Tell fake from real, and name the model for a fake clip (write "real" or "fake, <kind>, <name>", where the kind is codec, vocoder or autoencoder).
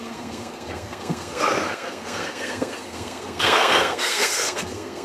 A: fake, codec, SNAC